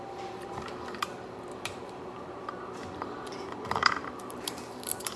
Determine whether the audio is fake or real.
fake